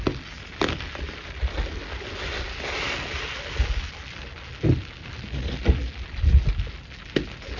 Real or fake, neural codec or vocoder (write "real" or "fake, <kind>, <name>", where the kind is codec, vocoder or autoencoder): real